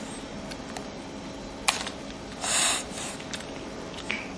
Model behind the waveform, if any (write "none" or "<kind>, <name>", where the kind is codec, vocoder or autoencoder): none